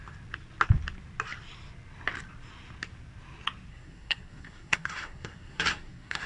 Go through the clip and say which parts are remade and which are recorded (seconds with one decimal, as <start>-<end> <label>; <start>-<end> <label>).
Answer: 0.0-3.7 recorded; 3.7-6.3 remade